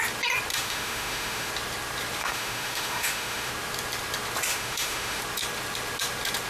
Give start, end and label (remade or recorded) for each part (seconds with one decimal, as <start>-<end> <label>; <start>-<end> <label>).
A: 0.0-0.5 recorded; 0.5-1.5 remade; 1.5-2.2 recorded; 2.2-3.5 remade; 3.5-4.5 recorded; 4.5-5.2 remade; 5.2-6.5 recorded